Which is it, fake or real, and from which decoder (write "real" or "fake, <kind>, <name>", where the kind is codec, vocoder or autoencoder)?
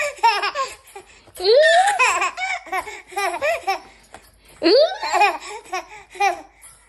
real